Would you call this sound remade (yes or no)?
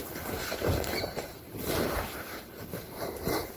yes